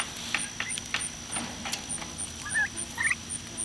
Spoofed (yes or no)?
no